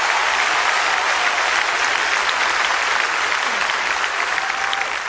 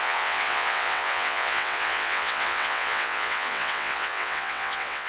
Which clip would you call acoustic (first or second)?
first